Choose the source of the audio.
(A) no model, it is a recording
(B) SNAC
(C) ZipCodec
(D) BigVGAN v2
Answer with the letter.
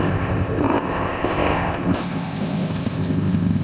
C